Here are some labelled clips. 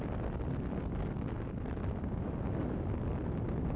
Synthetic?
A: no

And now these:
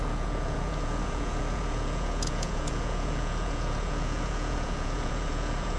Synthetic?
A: yes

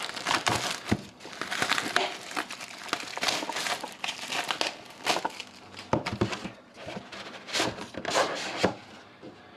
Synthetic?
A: no